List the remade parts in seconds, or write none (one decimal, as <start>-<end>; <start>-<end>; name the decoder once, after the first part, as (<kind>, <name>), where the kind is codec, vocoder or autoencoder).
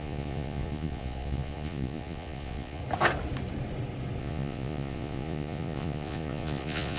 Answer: 0.0-2.8 (vocoder, Vocos); 4.2-7.0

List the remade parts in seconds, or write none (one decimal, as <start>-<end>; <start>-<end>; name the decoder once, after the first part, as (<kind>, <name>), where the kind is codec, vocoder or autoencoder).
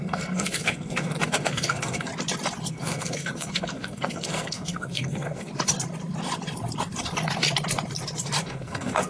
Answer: 0.0-2.1 (codec, SNAC); 2.7-5.5; 8.4-9.1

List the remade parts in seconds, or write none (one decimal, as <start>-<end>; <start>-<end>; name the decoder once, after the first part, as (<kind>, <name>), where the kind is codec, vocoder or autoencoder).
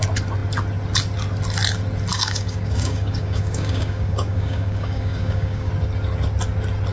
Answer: 2.1-5.7 (codec, DAC)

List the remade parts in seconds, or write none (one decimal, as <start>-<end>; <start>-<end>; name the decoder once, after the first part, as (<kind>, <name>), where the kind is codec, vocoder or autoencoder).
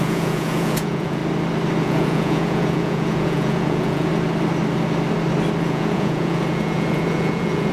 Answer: 0.0-1.2 (vocoder, Vocos); 1.8-4.1; 5.6-7.7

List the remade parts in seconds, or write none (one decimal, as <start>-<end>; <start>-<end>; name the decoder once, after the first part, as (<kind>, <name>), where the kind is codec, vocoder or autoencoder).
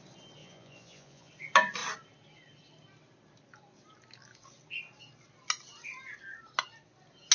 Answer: 0.4-1.3 (vocoder, Vocos)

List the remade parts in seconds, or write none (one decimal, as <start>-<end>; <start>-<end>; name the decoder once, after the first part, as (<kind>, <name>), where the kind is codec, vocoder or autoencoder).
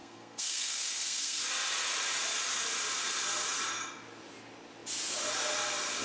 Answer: 0.0-1.4 (codec, SNAC)